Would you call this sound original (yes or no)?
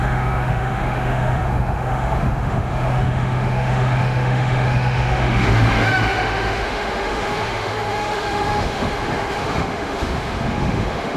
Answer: no